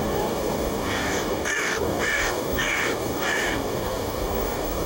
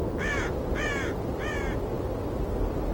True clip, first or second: second